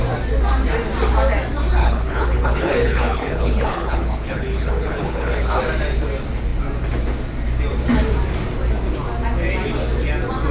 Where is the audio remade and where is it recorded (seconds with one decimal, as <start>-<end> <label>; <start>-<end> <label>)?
0.0-1.8 recorded; 1.8-5.6 remade; 5.6-10.5 recorded